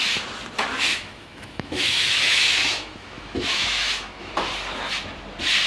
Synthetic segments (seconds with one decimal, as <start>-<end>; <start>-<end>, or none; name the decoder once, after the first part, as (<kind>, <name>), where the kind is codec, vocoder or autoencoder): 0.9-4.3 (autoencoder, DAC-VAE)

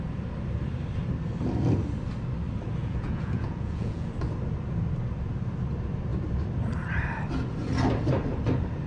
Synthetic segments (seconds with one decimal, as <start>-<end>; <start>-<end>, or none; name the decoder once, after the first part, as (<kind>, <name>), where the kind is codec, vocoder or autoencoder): 2.8-4.1 (vocoder, Vocos)

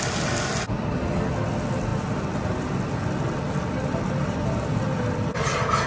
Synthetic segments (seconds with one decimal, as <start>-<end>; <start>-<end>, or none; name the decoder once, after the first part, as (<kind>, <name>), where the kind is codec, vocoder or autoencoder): none

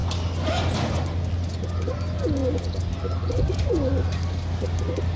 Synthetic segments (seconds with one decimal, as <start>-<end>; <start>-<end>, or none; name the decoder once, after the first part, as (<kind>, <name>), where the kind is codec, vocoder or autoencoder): none

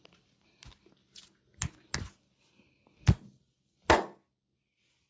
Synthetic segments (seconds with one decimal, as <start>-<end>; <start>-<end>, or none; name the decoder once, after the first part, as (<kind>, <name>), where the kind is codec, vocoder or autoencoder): none

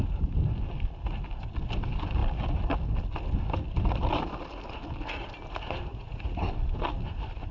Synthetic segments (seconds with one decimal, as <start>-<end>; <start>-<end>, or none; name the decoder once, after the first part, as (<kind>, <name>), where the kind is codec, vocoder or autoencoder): 5.9-6.4 (vocoder, Vocos)

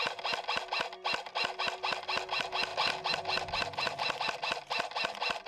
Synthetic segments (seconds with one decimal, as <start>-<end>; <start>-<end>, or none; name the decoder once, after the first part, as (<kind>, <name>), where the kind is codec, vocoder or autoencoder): none

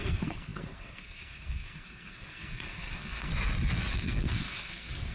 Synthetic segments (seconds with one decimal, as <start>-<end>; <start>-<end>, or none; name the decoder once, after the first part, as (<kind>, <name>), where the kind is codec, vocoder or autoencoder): 0.0-3.3 (codec, SNAC); 3.9-5.1